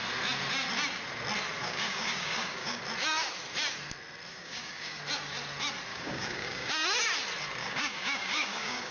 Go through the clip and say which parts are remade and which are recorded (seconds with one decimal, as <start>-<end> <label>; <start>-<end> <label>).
0.0-1.6 recorded; 1.6-2.8 remade; 2.8-4.3 recorded; 4.3-5.0 remade; 5.0-5.9 recorded; 5.9-6.7 remade; 6.7-7.6 recorded; 7.6-8.9 remade